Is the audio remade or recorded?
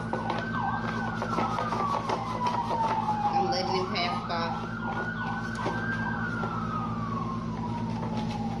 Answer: recorded